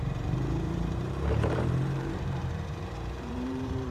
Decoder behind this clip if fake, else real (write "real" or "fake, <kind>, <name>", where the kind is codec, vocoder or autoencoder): fake, vocoder, BigVGAN v2